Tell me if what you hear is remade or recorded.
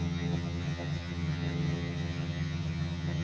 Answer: remade